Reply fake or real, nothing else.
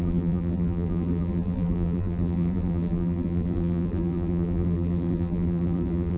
fake